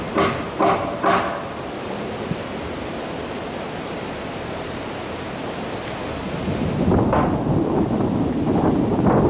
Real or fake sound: real